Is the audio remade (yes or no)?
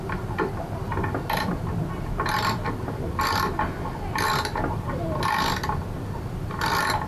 no